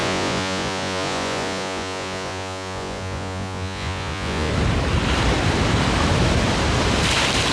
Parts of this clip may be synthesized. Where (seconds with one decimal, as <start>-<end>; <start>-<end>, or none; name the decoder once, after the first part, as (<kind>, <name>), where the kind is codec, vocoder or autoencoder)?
0.0-4.5 (vocoder, Vocos)